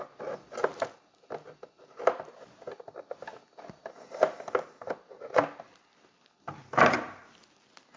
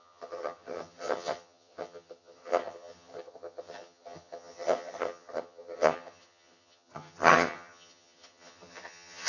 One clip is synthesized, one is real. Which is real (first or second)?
first